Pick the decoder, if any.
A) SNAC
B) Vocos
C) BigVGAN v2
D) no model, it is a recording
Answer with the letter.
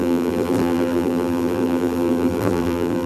C